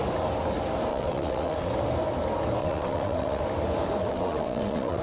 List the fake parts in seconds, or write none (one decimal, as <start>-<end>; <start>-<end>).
0.9-1.7; 2.6-3.4; 4.0-5.0